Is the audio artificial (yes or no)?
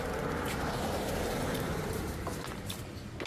no